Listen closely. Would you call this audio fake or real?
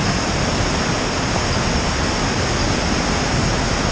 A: real